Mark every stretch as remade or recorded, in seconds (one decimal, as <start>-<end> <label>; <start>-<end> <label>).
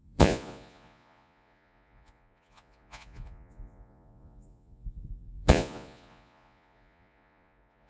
0.0-7.9 remade